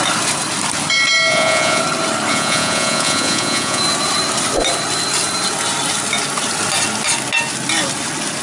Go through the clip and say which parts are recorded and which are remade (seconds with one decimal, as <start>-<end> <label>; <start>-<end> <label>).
0.0-1.3 recorded; 1.3-1.8 remade; 1.8-2.3 recorded; 2.3-3.8 remade; 3.8-8.4 recorded